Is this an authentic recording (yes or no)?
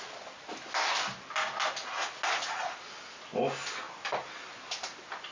yes